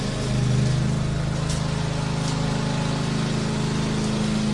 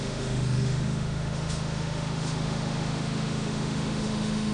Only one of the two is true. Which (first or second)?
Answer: first